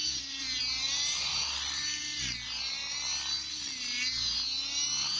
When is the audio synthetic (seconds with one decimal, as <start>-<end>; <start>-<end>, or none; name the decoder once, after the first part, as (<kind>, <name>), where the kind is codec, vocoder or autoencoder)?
none